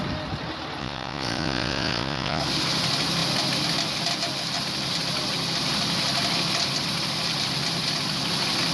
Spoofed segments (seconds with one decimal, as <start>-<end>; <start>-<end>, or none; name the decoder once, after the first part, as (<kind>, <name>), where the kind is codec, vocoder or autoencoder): 0.8-2.4 (vocoder, Vocos)